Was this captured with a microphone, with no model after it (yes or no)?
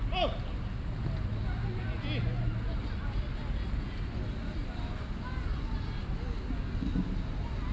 yes